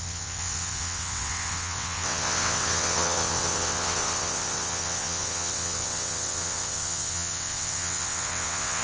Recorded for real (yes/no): no